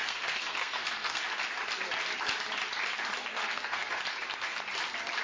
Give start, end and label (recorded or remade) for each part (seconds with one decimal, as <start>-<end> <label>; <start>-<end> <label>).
0.0-1.2 remade; 1.2-3.3 recorded; 3.3-4.0 remade; 4.0-5.2 recorded